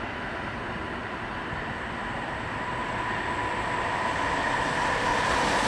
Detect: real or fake real